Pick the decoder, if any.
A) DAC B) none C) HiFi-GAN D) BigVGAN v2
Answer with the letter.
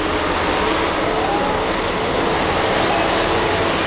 B